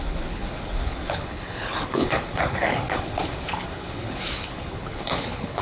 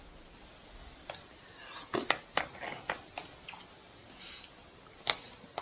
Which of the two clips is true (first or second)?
second